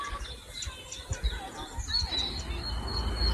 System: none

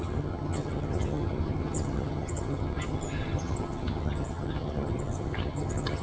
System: vocoder, HiFi-GAN